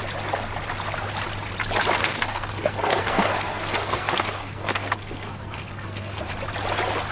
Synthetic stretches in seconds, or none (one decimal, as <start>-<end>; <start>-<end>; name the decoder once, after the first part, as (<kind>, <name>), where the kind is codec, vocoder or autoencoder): 2.0-6.3 (codec, SNAC)